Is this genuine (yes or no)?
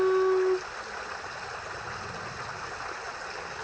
yes